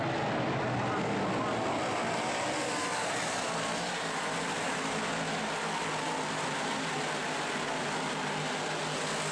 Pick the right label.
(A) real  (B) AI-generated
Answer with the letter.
A